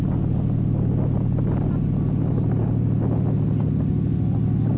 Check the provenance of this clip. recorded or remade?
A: recorded